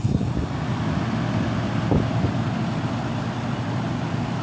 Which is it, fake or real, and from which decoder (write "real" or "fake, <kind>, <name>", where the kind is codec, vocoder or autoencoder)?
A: real